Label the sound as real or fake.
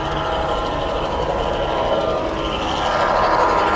real